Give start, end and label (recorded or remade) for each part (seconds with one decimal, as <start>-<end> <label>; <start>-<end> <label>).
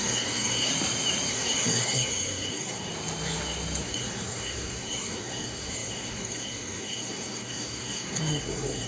0.0-0.7 remade; 0.7-1.3 recorded; 1.3-2.9 remade; 2.9-3.8 recorded; 3.8-8.9 remade